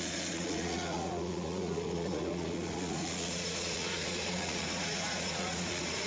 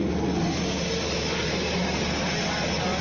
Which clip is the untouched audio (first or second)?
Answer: second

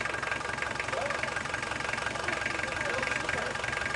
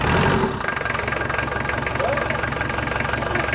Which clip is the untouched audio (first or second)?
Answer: second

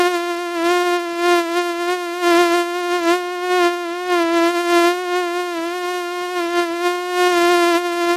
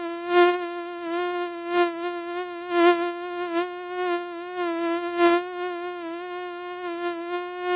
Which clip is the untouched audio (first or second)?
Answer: first